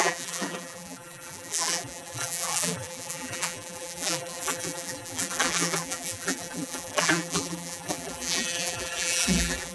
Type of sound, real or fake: fake